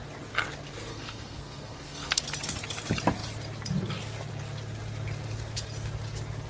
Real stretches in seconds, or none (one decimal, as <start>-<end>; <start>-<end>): 0.0-0.9; 2.2-6.5